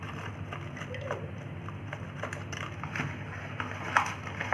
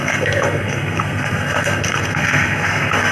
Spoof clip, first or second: second